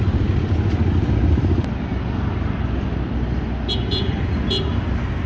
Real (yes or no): yes